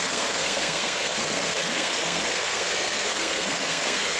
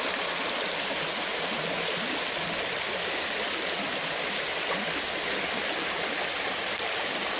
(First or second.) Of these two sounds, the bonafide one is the second